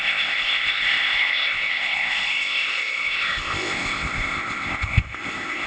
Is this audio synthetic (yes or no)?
yes